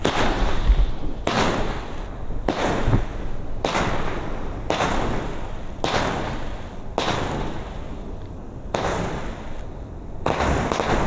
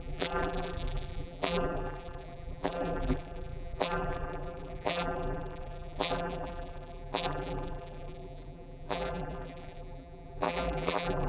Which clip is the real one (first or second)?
first